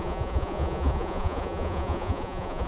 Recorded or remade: remade